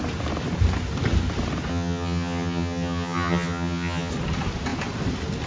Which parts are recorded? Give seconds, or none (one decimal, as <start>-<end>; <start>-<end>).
0.0-1.7; 4.1-5.5